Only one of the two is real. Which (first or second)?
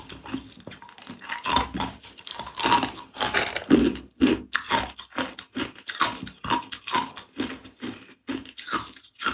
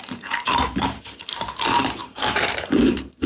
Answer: first